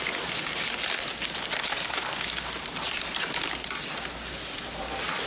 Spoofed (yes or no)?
no